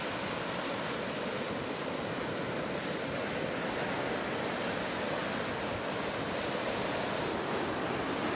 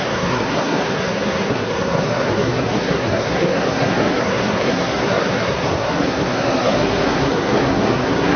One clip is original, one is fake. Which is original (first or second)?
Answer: first